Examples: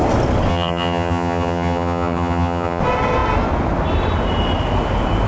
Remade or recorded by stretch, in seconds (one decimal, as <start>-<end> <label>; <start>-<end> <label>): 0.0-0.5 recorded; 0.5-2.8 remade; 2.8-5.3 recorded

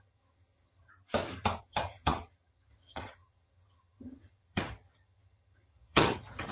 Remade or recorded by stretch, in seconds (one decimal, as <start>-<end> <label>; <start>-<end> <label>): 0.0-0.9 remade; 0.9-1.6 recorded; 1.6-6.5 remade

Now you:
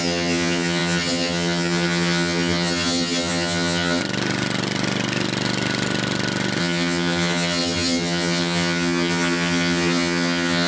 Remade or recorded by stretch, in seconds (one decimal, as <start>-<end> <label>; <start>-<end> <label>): 0.0-4.0 remade; 4.0-6.6 recorded; 6.6-10.7 remade